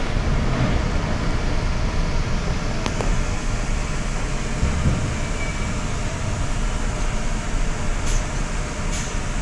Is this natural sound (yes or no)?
yes